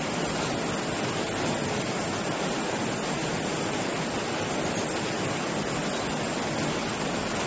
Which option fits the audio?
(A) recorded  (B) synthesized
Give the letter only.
A